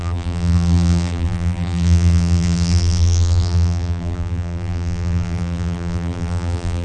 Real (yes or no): no